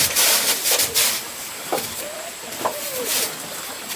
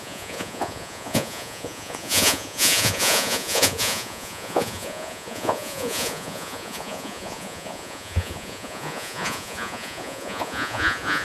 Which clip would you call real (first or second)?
first